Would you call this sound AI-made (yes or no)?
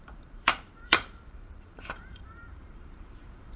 yes